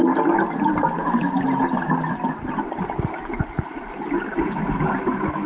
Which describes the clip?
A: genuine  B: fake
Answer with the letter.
A